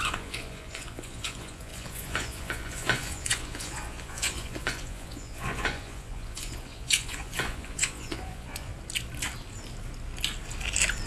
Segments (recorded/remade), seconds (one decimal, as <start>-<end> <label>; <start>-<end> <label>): 0.0-8.7 remade; 8.7-11.1 recorded